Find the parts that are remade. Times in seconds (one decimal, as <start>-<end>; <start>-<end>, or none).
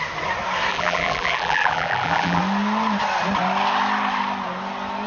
0.7-2.4